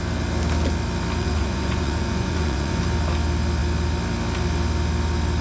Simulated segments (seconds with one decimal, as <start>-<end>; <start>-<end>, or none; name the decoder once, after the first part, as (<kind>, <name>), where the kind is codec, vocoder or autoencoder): 1.2-2.8 (vocoder, Vocos)